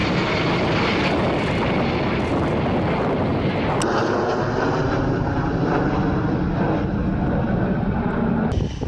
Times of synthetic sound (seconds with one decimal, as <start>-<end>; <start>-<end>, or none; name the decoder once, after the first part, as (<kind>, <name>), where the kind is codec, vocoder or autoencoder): none